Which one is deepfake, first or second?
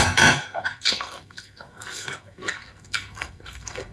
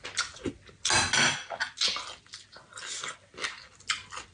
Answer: first